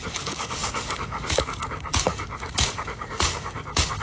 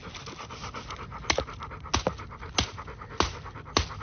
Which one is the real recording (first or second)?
second